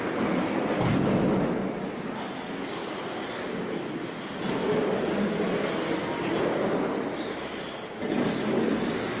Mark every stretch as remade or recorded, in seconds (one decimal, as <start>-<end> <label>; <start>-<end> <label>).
0.0-9.2 recorded